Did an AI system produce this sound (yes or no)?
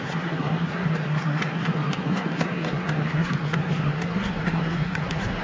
yes